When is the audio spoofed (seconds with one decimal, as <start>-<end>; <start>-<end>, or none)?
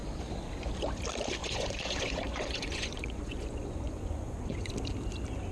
1.4-4.7